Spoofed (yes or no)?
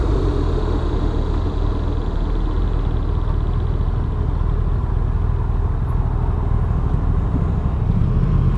no